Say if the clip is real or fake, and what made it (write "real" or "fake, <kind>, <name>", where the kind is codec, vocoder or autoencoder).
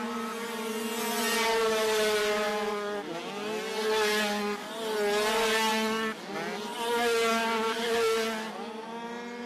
real